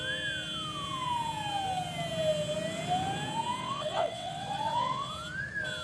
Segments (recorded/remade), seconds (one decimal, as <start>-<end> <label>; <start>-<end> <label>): 0.0-3.6 recorded; 3.6-5.1 remade; 5.1-5.8 recorded